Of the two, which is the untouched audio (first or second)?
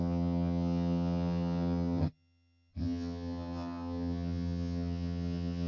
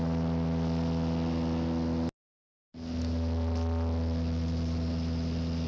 second